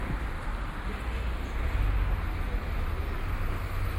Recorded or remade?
recorded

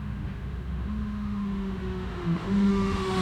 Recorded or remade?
remade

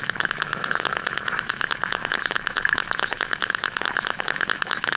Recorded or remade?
remade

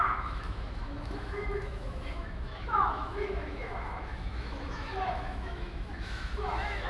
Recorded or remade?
remade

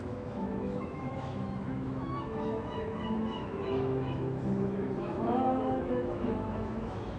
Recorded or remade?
remade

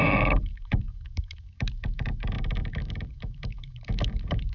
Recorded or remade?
remade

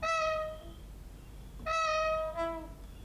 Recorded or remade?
recorded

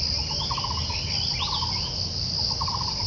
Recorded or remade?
recorded